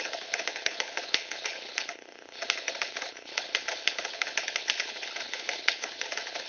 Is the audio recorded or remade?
remade